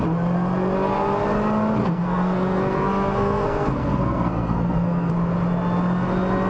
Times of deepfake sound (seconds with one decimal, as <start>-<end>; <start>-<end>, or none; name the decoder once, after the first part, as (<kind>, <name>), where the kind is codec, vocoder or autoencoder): 1.8-5.1 (codec, SNAC)